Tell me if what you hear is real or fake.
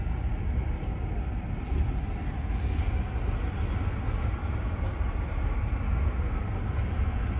real